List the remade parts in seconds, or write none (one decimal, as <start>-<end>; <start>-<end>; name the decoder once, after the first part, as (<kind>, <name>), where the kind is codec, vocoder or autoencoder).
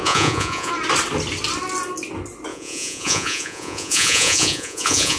0.0-0.7 (vocoder, Vocos); 2.5-5.2